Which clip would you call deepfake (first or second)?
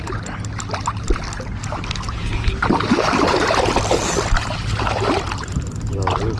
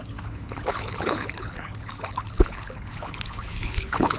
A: second